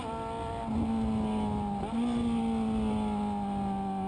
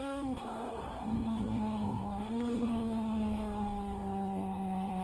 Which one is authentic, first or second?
first